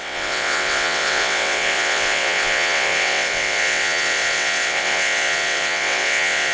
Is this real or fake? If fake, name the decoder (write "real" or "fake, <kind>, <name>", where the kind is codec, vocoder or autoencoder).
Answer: fake, vocoder, WaveNeXt